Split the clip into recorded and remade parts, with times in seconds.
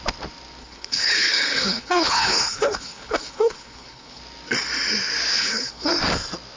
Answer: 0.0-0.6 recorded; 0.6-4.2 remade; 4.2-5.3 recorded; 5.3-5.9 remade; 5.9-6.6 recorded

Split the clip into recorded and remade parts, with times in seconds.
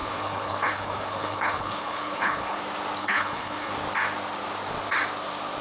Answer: 0.0-2.6 remade; 2.6-3.0 recorded; 3.0-3.7 remade; 3.7-5.6 recorded